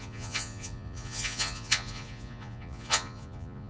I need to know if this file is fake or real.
fake